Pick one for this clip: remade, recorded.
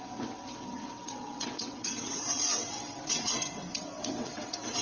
remade